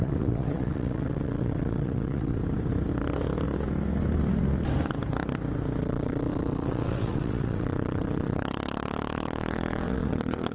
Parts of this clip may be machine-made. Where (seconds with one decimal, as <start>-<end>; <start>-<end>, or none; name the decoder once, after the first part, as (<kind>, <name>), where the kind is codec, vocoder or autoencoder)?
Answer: 0.0-2.4 (vocoder, WaveNeXt); 5.8-10.5